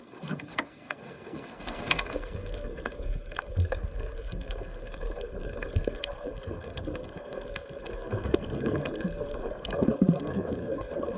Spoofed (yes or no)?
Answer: yes